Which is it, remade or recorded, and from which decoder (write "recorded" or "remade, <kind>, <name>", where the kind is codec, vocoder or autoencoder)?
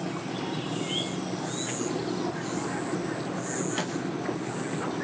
recorded